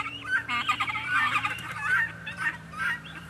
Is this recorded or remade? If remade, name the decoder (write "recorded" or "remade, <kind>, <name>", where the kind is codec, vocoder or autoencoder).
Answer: remade, vocoder, BigVGAN v2